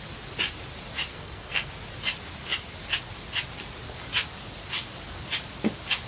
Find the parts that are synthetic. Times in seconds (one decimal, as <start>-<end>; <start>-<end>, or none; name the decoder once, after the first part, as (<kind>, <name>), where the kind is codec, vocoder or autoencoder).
1.1-1.7 (codec, SNAC)